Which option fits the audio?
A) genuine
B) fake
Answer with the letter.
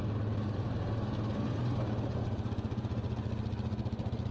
A